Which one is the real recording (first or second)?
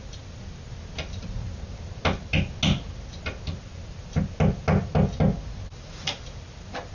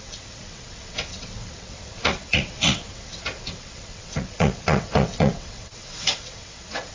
first